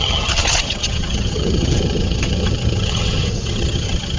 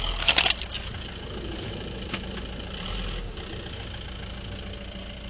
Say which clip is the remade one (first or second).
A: first